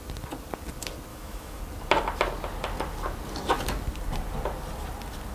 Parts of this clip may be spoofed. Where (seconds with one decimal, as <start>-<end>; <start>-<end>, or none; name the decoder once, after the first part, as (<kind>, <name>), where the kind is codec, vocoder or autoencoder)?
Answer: 1.1-1.6 (autoencoder, DAC-VAE)